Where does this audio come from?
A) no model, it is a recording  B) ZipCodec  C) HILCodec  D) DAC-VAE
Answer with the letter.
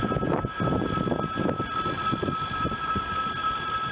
A